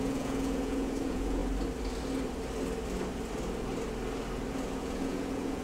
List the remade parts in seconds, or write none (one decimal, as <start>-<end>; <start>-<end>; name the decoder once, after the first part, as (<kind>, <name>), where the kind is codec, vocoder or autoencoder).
0.0-1.4 (vocoder, Vocos); 4.8-5.6